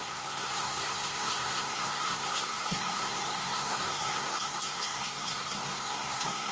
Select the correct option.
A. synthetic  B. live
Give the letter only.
A